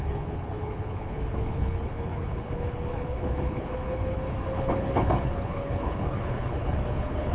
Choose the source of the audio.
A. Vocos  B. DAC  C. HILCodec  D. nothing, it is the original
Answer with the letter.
C